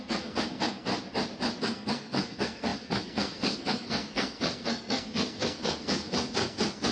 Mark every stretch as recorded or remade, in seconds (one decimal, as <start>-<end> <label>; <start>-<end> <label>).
0.0-0.9 remade; 0.9-1.6 recorded; 1.6-6.9 remade